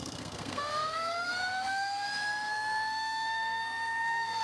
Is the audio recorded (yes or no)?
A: no